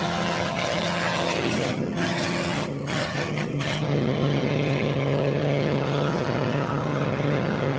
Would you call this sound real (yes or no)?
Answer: no